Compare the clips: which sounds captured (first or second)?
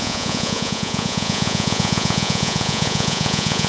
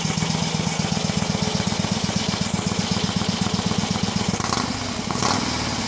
second